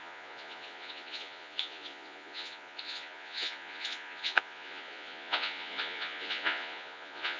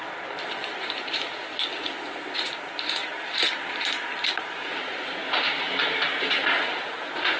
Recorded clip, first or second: second